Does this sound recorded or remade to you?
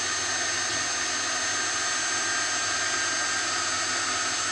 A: recorded